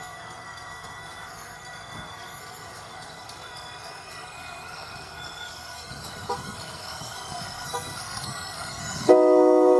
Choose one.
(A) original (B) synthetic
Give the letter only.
B